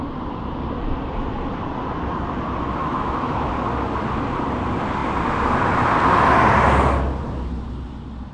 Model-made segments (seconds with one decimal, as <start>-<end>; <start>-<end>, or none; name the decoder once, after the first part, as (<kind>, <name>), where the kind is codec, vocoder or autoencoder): 2.8-3.5 (autoencoder, DAC-VAE)